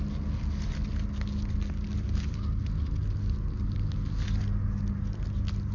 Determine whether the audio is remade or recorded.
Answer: recorded